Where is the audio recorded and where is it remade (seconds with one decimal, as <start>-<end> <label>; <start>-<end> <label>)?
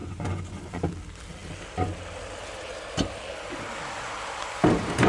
0.0-0.8 remade; 0.8-5.1 recorded